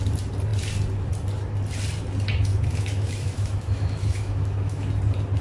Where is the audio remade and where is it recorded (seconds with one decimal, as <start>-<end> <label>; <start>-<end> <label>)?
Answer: 0.0-2.5 recorded; 2.5-4.9 remade; 4.9-5.4 recorded